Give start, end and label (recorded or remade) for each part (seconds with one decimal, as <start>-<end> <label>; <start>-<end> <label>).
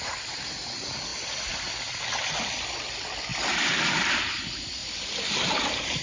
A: 0.0-6.0 recorded